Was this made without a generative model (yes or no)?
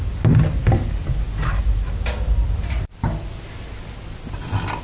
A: yes